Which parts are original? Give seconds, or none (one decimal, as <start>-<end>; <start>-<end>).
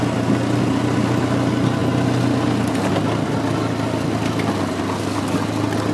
0.0-5.9